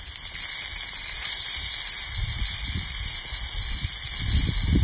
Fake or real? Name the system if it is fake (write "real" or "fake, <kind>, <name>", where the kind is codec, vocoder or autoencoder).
real